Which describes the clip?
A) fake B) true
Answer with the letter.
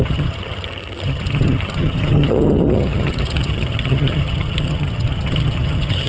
A